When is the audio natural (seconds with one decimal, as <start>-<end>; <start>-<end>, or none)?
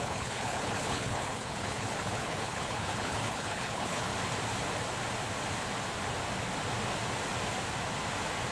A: 4.1-8.5